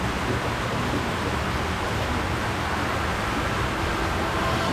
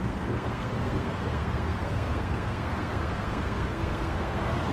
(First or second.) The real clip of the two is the first